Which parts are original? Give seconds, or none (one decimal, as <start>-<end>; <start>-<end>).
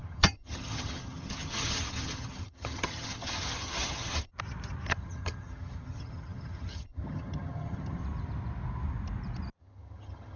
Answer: 4.3-4.9; 8.0-9.6